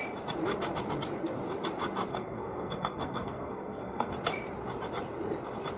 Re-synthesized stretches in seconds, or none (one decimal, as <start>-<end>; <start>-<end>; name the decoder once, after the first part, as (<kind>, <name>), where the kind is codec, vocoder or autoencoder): 2.1-4.1 (codec, SNAC)